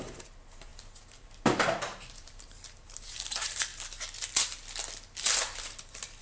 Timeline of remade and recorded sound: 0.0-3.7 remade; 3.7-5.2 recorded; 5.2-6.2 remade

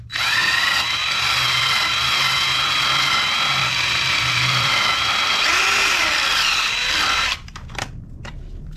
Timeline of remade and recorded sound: 0.0-0.4 remade; 0.4-3.7 recorded; 3.7-8.8 remade

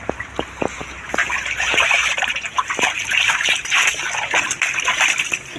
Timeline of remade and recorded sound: 0.0-1.2 recorded; 1.2-4.0 remade; 4.0-5.6 recorded